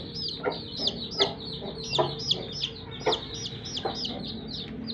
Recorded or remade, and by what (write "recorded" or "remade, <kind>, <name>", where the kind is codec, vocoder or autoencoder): recorded